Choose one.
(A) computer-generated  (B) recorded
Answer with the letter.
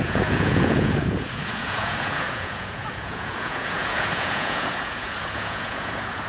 A